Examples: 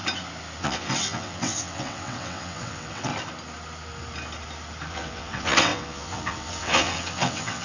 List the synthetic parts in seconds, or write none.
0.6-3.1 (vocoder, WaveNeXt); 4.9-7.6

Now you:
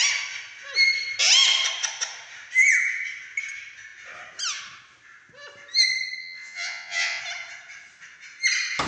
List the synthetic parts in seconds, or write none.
6.2-7.2 (vocoder, WaveNeXt)

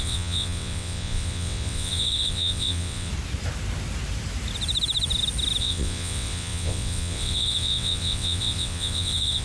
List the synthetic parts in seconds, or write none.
0.0-3.1 (vocoder, WaveNeXt); 5.6-9.4

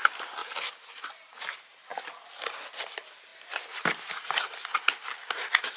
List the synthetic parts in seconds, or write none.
none

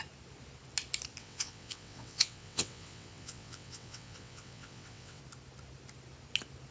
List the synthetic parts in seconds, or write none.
1.2-5.2 (vocoder, WaveNeXt)

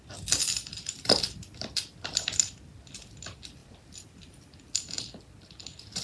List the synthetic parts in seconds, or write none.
none